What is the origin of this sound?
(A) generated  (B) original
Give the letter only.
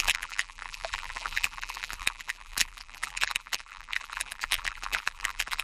A